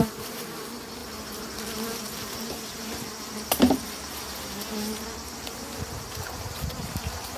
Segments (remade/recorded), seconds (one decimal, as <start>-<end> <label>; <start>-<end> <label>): 0.0-7.4 recorded